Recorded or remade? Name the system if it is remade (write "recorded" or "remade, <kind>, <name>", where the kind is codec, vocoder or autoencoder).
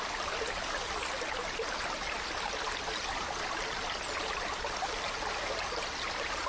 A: recorded